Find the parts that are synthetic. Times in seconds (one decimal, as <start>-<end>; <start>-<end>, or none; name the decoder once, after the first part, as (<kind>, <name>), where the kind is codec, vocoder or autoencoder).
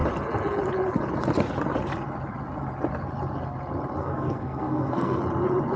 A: 4.0-5.2 (codec, SNAC)